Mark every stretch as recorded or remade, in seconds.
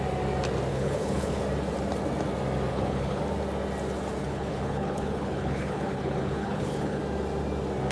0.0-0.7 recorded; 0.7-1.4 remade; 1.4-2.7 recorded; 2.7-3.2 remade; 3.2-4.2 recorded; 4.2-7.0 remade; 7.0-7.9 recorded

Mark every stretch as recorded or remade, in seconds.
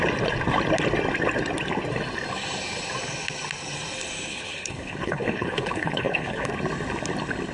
0.0-4.3 recorded; 4.3-6.5 remade; 6.5-7.5 recorded